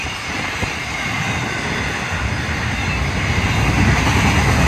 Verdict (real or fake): real